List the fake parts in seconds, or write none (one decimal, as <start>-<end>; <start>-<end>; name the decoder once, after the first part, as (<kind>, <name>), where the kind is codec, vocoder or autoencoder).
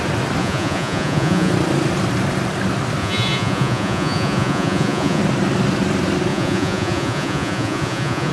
0.4-1.5 (vocoder, Vocos); 3.0-5.2; 6.3-8.3